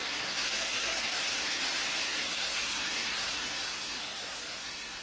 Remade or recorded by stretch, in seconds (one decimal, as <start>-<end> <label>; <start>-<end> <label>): 0.0-1.6 remade; 1.6-2.0 recorded; 2.0-5.0 remade